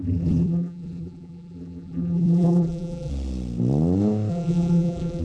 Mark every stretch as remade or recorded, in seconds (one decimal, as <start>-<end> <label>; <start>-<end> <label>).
0.0-3.1 remade; 3.1-4.3 recorded; 4.3-5.2 remade